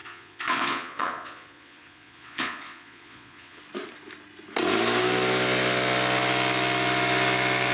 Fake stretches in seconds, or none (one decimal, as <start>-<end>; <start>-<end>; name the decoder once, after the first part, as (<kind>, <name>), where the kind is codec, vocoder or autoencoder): 0.0-3.6 (vocoder, Vocos)